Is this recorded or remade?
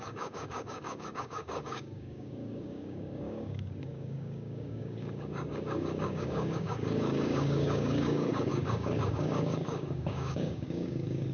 remade